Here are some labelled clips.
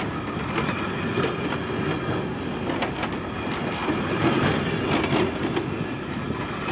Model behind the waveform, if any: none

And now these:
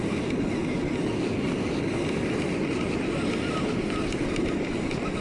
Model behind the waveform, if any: none